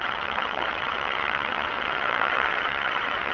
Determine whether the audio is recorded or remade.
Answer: remade